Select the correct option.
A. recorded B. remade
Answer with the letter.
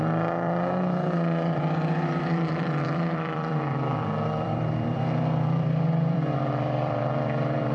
B